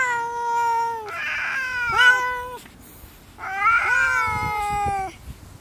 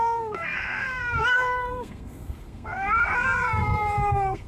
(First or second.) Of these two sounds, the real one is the first